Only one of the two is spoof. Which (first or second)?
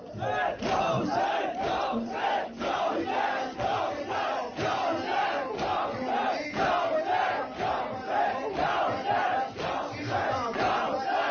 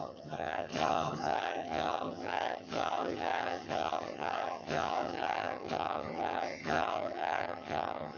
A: second